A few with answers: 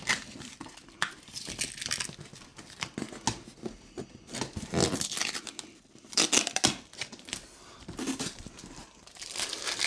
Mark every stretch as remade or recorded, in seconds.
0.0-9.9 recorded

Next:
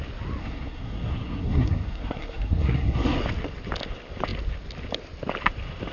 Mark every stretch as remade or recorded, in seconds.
0.0-0.4 recorded; 0.4-3.2 remade; 3.2-5.9 recorded

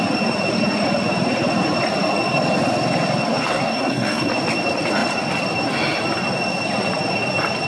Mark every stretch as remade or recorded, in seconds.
0.0-3.5 recorded; 3.5-4.3 remade; 4.3-7.7 recorded